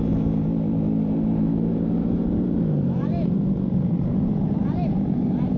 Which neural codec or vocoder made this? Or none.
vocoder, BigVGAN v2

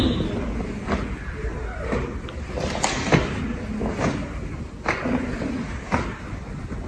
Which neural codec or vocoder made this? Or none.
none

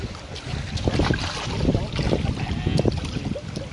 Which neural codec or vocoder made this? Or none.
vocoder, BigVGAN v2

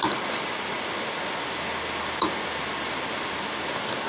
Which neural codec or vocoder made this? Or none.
none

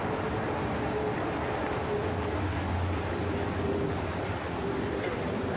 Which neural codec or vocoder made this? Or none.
vocoder, BigVGAN v2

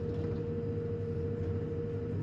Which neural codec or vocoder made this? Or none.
none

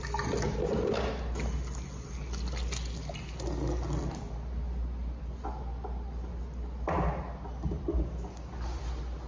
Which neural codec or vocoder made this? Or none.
none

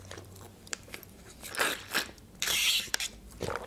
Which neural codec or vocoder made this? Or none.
vocoder, BigVGAN v2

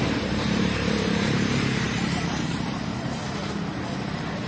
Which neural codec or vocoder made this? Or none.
vocoder, BigVGAN v2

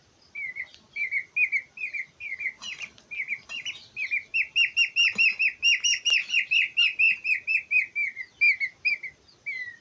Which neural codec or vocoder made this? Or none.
none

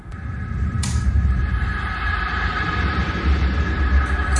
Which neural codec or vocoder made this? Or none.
vocoder, BigVGAN v2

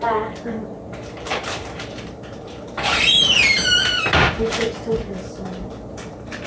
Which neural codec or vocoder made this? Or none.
vocoder, BigVGAN v2